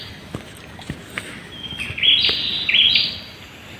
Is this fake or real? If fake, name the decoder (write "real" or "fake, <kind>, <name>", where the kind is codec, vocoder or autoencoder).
real